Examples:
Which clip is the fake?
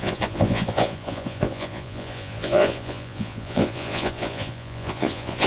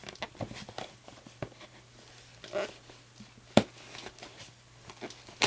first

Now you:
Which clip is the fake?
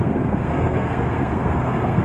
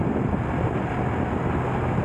first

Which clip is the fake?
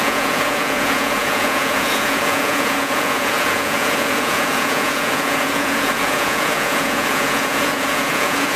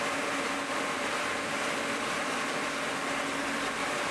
first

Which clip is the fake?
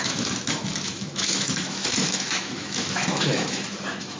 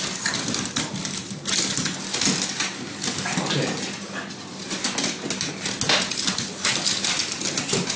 first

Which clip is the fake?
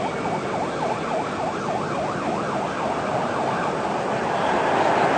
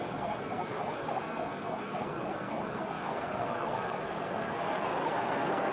second